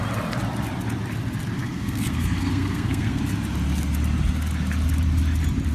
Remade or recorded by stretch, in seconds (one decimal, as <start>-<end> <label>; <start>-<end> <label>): 0.0-1.6 recorded; 1.6-3.2 remade; 3.2-5.7 recorded